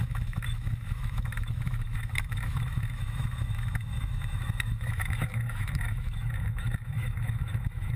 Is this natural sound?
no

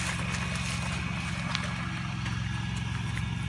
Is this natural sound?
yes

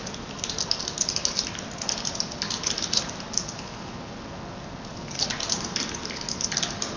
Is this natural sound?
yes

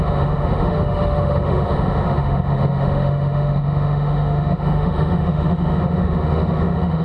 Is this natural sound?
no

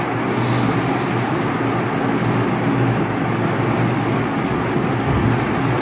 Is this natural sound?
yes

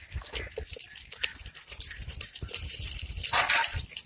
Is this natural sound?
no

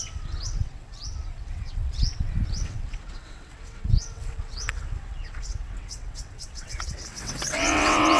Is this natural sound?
no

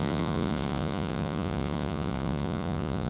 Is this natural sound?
no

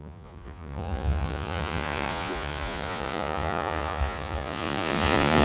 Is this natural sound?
no